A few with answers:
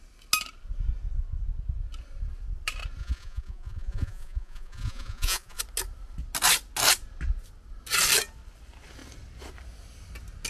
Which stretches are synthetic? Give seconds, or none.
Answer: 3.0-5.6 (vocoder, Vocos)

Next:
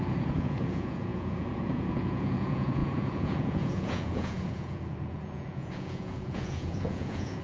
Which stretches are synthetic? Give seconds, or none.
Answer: 0.0-7.4 (vocoder, Vocos)